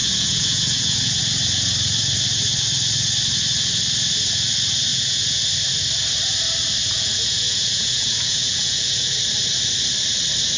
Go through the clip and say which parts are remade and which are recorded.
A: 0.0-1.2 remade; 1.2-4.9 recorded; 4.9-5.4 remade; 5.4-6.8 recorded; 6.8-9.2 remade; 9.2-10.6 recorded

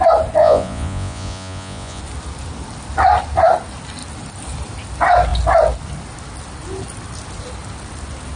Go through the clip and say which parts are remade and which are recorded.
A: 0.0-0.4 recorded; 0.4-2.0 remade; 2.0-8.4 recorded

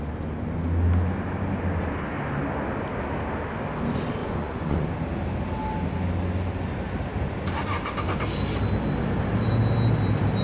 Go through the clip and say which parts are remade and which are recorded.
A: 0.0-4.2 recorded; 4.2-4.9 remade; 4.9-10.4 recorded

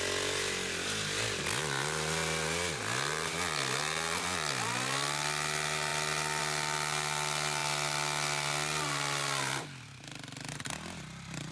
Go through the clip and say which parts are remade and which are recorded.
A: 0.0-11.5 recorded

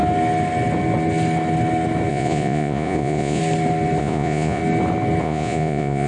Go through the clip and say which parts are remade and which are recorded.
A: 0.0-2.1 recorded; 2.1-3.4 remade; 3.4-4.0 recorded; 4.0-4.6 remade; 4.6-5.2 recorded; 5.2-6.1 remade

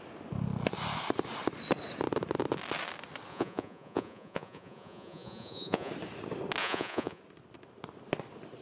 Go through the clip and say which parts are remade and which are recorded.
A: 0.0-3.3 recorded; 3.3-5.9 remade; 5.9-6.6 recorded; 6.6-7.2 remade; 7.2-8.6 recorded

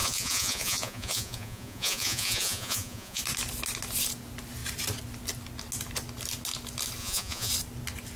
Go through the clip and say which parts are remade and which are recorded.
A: 0.0-3.2 remade; 3.2-7.0 recorded; 7.0-7.5 remade; 7.5-8.2 recorded

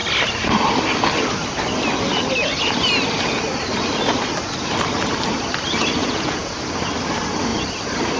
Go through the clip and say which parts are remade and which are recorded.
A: 0.0-6.0 recorded; 6.0-6.5 remade; 6.5-8.2 recorded